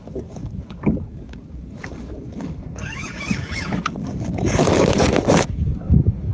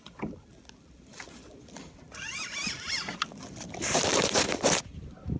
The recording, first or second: second